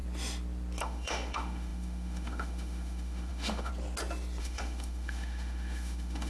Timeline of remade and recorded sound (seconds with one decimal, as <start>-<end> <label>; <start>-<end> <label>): 0.0-0.8 recorded; 0.8-3.7 remade; 3.7-4.4 recorded; 4.4-6.3 remade

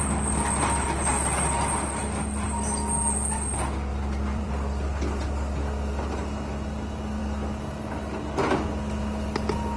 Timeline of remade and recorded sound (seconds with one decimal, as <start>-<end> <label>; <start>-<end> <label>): 0.0-3.9 recorded; 3.9-4.5 remade; 4.5-9.8 recorded

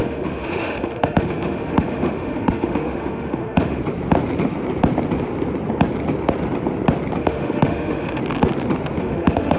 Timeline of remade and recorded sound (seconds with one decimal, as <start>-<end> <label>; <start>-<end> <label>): 0.0-3.8 remade; 3.8-7.2 recorded; 7.2-8.2 remade; 8.2-9.0 recorded; 9.0-9.6 remade

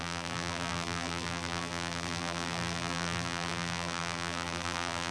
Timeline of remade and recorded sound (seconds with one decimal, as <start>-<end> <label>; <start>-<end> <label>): 0.0-5.1 remade